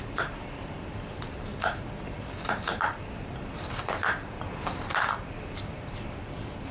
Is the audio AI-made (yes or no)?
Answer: yes